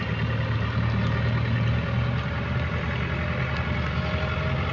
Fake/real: real